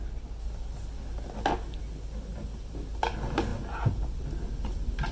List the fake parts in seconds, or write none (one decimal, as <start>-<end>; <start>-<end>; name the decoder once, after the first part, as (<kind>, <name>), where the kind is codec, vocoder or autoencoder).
none